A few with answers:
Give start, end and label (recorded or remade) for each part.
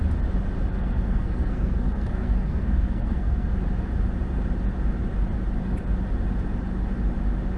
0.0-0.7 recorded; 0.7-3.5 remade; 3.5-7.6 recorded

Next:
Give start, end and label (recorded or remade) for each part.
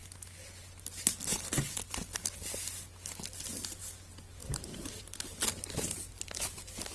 0.0-4.4 recorded; 4.4-5.3 remade; 5.3-6.9 recorded